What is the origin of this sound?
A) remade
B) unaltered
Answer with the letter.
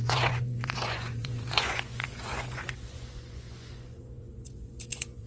A